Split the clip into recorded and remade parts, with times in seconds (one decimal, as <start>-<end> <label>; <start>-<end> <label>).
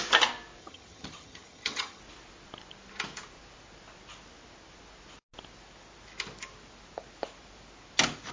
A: 0.0-0.6 recorded; 0.6-2.0 remade; 2.0-8.3 recorded